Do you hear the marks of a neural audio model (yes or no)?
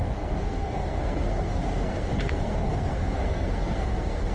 yes